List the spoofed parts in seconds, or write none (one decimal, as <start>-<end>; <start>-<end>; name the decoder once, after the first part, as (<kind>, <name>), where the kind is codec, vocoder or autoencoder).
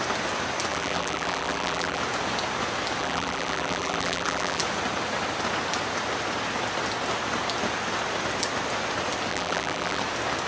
0.7-2.0 (vocoder, BigVGAN v2); 3.0-4.6; 9.3-10.0